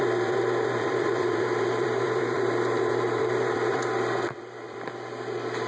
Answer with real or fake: fake